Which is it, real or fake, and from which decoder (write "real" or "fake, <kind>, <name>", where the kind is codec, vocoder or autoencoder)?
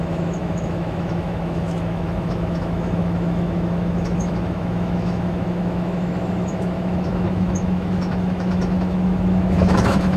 fake, autoencoder, DAC-VAE